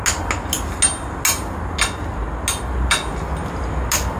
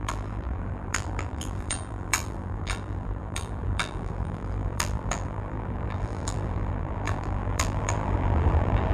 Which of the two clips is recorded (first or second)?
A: first